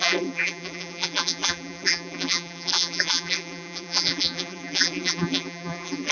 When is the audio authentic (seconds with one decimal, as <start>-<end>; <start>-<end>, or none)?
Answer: none